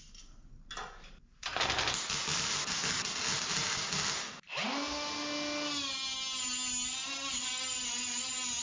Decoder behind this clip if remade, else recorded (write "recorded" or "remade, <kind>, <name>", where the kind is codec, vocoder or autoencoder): recorded